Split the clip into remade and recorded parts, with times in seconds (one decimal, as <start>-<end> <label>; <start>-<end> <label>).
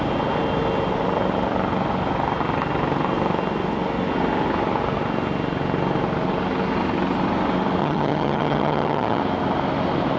0.0-7.8 recorded; 7.8-9.2 remade; 9.2-10.2 recorded